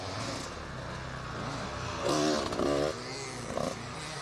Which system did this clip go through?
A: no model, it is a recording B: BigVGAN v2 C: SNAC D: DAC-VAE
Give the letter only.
A